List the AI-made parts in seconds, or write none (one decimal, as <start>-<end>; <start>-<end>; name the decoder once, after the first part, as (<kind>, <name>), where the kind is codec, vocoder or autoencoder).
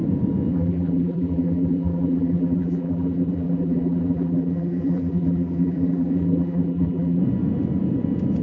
0.5-7.2 (vocoder, BigVGAN v2)